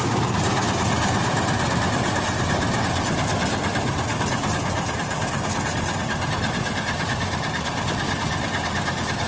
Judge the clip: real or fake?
real